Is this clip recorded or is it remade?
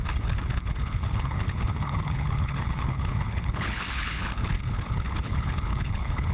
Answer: remade